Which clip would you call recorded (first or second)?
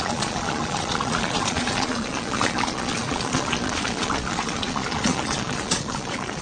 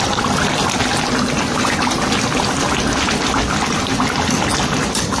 second